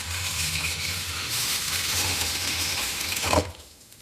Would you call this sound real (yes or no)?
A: no